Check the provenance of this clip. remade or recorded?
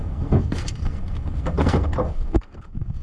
remade